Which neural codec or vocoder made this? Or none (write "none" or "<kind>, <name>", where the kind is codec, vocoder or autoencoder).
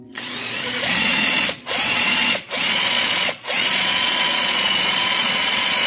vocoder, Vocos